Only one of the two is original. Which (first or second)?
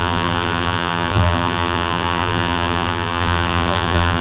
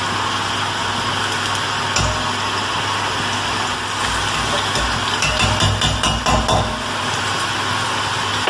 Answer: second